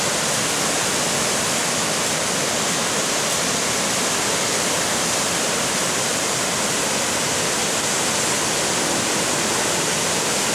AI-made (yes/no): no